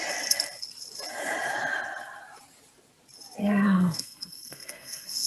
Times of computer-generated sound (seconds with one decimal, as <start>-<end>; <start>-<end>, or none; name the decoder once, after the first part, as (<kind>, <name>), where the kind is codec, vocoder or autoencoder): 3.4-5.3 (codec, SNAC)